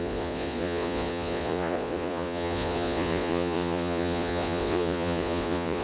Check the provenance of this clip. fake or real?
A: fake